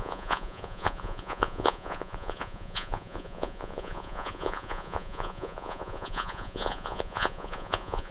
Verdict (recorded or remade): remade